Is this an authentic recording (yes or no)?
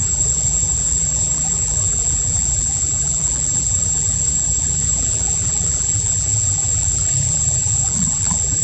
no